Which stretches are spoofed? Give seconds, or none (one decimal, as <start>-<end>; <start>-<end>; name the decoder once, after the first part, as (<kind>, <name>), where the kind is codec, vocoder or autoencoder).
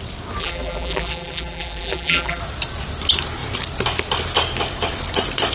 0.4-2.4 (vocoder, BigVGAN v2)